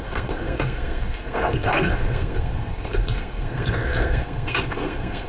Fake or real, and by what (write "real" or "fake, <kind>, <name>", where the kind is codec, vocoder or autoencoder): fake, codec, SNAC